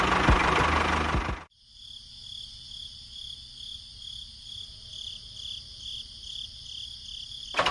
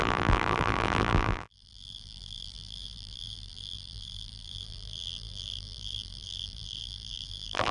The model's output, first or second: second